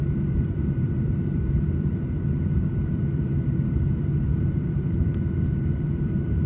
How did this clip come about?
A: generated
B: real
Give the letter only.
A